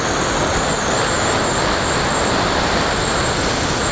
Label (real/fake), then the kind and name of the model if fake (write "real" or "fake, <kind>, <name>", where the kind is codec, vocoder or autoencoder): real